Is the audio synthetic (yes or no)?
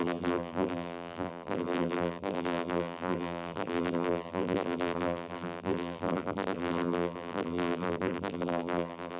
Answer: yes